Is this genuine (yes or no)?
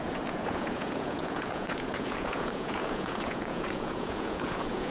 no